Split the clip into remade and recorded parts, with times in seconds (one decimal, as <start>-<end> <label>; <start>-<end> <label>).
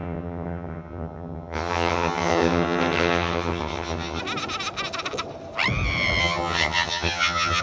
0.0-4.2 remade; 4.2-6.2 recorded; 6.2-7.6 remade